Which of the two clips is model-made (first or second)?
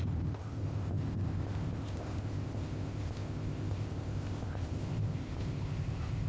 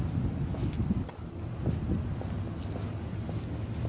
first